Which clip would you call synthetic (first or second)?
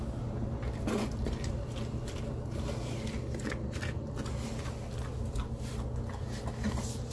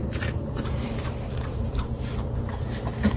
second